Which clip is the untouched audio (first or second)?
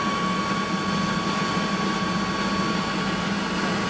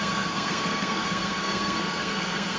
first